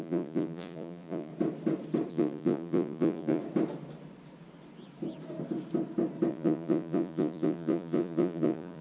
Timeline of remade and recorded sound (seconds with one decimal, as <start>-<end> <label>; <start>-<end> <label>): 0.0-1.3 remade; 1.3-2.1 recorded; 2.1-3.4 remade; 3.4-6.3 recorded; 6.3-8.8 remade